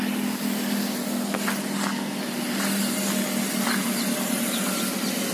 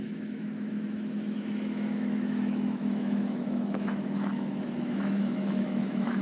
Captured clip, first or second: first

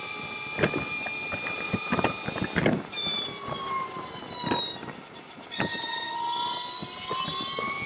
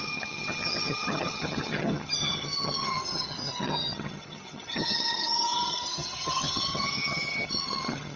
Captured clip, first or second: first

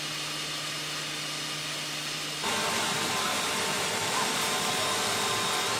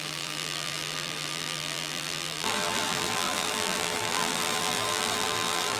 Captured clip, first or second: first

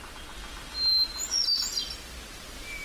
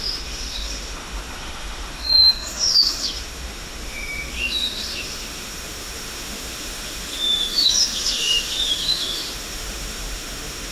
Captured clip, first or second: first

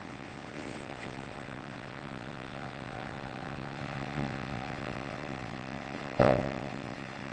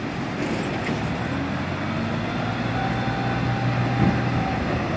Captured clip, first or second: second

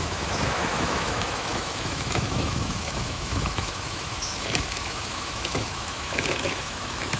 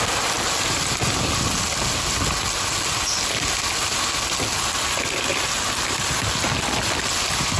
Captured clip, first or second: second